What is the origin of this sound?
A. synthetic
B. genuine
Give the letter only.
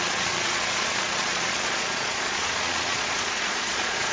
A